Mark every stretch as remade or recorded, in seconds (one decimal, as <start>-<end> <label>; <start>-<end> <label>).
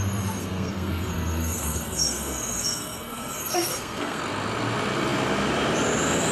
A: 0.0-0.4 recorded; 0.4-4.2 remade; 4.2-6.3 recorded